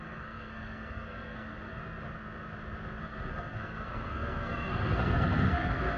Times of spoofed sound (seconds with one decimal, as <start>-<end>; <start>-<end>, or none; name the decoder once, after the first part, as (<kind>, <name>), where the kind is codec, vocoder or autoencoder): 0.0-1.8 (codec, SNAC); 3.0-6.0